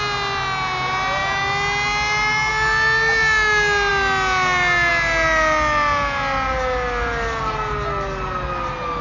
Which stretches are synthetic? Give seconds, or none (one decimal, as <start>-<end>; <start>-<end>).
none